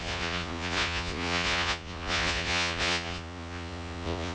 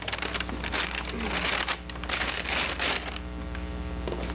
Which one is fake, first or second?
first